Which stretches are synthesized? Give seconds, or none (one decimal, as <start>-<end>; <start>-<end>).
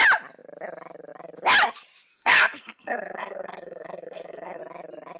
2.1-4.6